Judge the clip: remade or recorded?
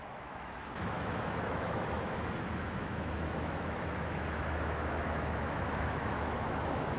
remade